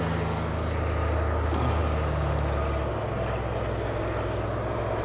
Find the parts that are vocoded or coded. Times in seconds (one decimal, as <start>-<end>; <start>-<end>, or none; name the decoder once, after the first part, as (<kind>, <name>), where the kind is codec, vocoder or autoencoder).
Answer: none